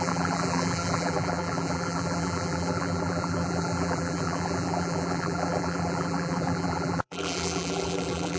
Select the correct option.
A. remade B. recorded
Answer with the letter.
A